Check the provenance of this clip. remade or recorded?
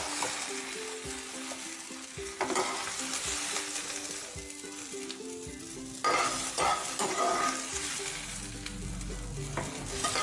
recorded